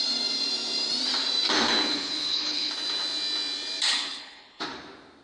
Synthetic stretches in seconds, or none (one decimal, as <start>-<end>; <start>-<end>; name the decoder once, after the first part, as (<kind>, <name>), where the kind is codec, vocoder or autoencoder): 1.9-2.7 (codec, HILCodec); 3.9-4.6